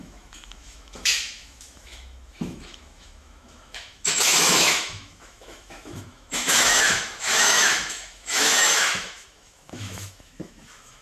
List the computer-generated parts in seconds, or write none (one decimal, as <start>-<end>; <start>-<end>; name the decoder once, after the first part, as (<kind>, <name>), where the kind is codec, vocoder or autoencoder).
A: 0.0-11.0 (autoencoder, DAC-VAE)